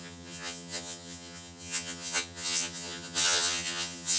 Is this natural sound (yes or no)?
no